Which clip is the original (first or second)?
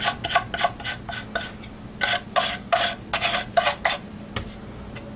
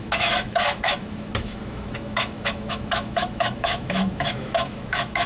first